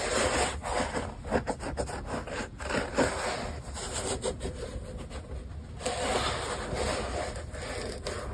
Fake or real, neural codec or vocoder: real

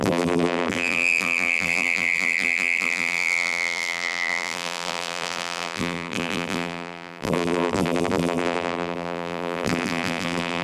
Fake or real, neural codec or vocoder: fake, vocoder, BigVGAN v2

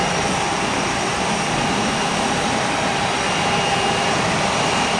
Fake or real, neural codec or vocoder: fake, vocoder, BigVGAN v2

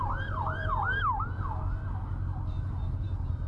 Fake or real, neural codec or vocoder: real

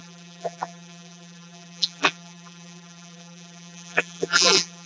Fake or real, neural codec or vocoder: fake, vocoder, BigVGAN v2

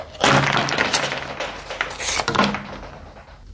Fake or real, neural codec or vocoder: real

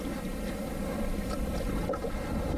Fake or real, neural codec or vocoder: real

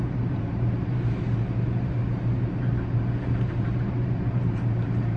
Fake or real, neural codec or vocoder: fake, vocoder, BigVGAN v2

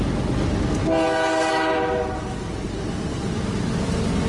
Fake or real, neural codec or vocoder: real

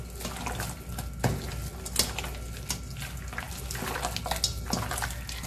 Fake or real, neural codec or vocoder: real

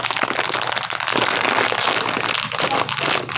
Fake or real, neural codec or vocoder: real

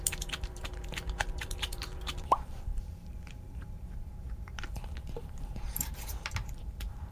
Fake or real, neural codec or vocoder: fake, vocoder, BigVGAN v2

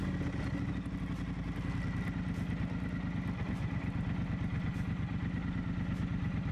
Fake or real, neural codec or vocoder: real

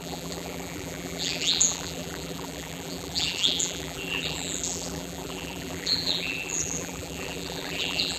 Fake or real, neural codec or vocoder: fake, vocoder, BigVGAN v2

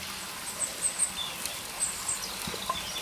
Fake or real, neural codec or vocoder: real